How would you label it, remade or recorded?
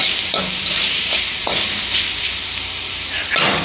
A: recorded